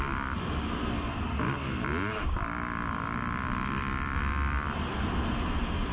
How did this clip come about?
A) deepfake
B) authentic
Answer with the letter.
B